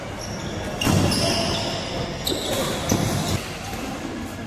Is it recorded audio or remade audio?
recorded